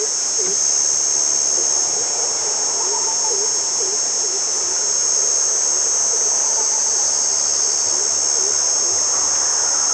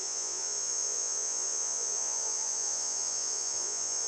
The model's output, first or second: second